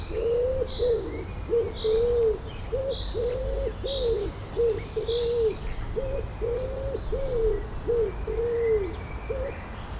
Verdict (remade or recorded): recorded